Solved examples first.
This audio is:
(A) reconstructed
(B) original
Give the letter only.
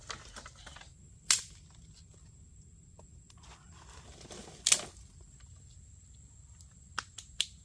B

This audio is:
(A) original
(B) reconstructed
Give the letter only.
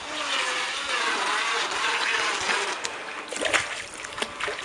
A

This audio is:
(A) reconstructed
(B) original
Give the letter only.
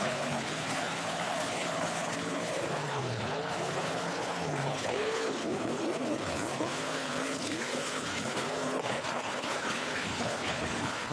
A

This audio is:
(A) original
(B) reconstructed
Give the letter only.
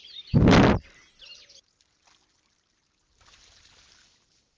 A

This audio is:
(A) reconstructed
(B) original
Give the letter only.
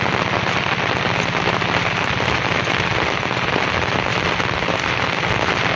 B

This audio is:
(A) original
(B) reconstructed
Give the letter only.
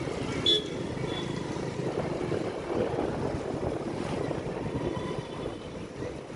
A